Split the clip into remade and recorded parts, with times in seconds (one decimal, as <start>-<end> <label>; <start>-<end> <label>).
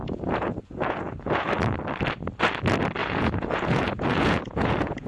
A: 0.0-1.5 remade; 1.5-3.0 recorded; 3.0-5.1 remade